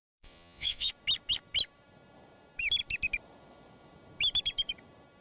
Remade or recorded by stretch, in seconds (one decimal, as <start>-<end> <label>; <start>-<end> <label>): 0.0-0.9 remade; 0.9-5.2 recorded